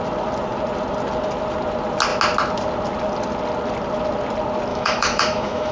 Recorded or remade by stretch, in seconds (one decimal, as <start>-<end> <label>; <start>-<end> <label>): 0.0-4.7 recorded; 4.7-5.7 remade